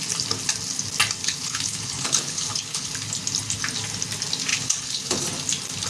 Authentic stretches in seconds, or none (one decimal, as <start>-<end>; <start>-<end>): 0.0-1.2; 2.9-4.5; 5.2-5.9